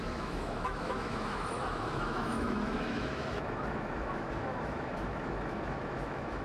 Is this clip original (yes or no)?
no